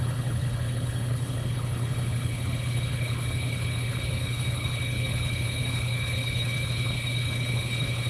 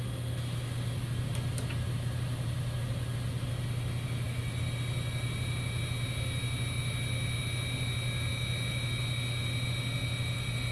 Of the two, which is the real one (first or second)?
second